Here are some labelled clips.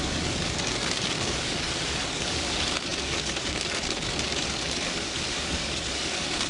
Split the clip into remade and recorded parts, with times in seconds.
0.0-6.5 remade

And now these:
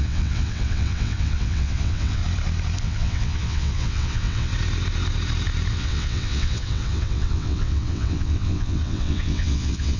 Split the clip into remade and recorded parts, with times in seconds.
0.0-2.2 remade; 2.2-2.8 recorded; 2.8-4.5 remade; 4.5-5.7 recorded; 5.7-10.0 remade